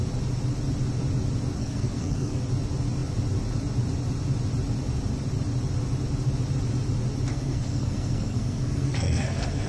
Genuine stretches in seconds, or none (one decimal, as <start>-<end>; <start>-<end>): 0.0-1.6; 2.4-7.3